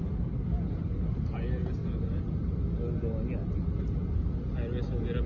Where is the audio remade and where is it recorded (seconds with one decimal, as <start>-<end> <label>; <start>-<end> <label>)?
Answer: 0.0-5.3 recorded